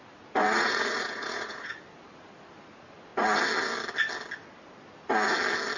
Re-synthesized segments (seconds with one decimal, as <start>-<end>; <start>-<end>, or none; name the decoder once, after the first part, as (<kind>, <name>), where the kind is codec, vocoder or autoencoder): 0.4-1.7 (vocoder, Vocos)